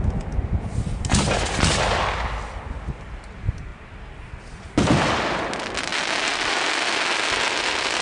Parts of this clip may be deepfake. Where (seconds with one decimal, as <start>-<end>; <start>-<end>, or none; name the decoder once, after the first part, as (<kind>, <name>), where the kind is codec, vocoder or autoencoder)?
none